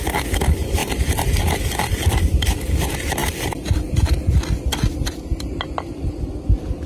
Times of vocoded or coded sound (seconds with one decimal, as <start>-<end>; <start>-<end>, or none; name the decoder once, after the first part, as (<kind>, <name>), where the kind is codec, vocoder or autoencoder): none